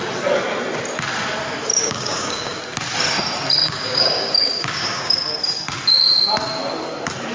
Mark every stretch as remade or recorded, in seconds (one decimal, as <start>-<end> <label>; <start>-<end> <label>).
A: 0.0-1.7 recorded; 1.7-2.6 remade; 2.6-3.6 recorded; 3.6-5.4 remade; 5.4-7.3 recorded